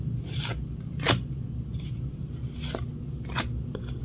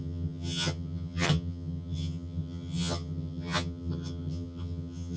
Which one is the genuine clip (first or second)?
first